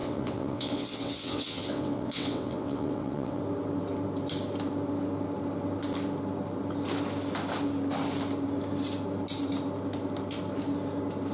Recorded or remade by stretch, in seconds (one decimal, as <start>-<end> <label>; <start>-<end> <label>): 0.0-3.4 remade; 3.4-11.3 recorded